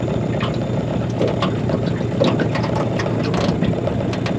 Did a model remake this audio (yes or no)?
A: no